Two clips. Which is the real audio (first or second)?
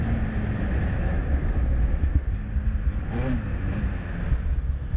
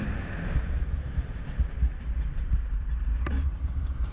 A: first